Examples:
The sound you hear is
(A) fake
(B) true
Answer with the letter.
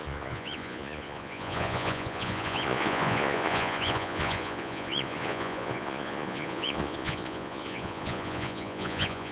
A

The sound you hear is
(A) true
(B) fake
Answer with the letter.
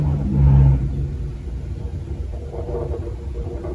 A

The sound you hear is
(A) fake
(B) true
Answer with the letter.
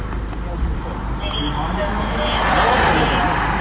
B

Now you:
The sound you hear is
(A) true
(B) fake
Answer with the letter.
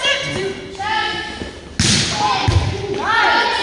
A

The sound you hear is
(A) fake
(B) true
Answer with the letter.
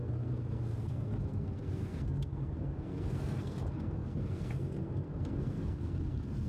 A